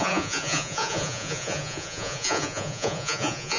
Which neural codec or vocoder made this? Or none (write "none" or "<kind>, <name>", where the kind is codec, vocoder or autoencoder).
vocoder, Vocos